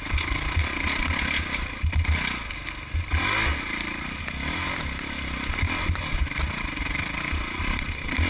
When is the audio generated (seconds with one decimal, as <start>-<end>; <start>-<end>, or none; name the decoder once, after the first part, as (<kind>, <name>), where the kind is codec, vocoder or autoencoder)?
3.5-4.2 (vocoder, BigVGAN v2)